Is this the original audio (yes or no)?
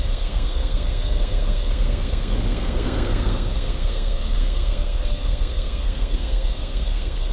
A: no